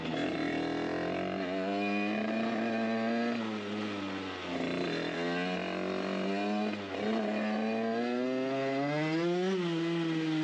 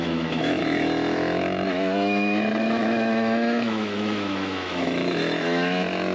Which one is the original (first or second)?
first